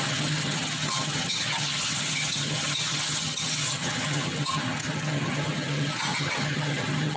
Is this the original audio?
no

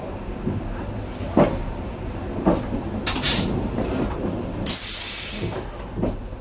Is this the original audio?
yes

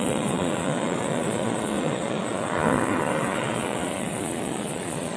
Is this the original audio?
no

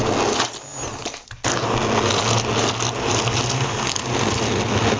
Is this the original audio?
yes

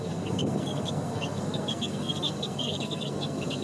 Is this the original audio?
no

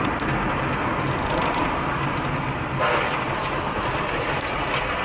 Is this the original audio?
yes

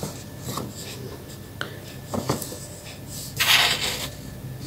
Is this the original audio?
yes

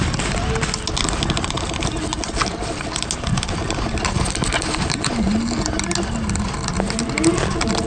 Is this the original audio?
yes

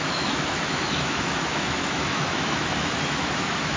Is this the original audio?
no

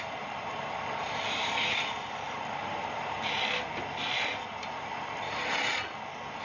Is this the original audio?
yes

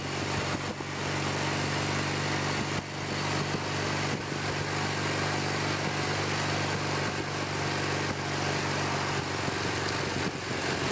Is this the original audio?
yes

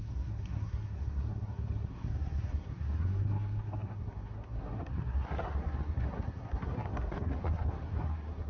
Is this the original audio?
no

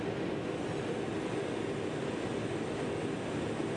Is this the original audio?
yes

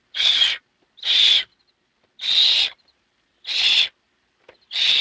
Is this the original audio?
yes